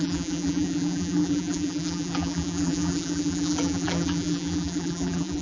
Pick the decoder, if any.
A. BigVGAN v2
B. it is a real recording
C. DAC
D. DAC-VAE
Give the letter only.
A